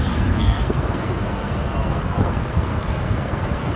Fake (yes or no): yes